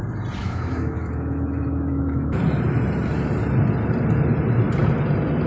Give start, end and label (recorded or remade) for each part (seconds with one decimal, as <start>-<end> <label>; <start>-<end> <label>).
0.0-0.4 recorded; 0.4-2.4 remade; 2.4-5.5 recorded

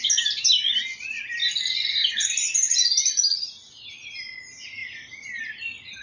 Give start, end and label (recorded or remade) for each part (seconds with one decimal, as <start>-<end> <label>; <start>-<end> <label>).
0.0-6.0 recorded

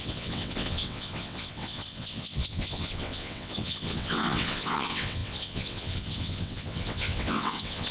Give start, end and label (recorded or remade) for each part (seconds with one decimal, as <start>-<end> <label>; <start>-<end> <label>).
0.0-7.9 remade

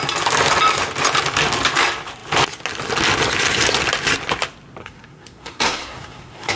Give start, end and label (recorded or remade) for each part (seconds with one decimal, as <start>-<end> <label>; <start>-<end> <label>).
0.0-4.8 recorded; 4.8-6.6 remade

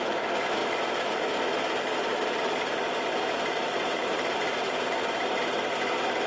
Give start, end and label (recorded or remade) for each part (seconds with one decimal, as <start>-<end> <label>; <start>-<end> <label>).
0.0-0.6 recorded; 0.6-1.4 remade; 1.4-2.1 recorded; 2.1-5.4 remade; 5.4-6.3 recorded

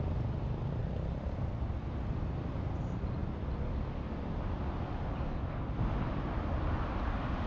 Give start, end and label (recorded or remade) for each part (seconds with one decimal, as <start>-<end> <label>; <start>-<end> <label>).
0.0-7.5 recorded